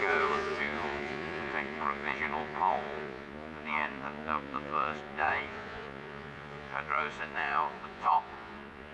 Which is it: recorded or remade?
remade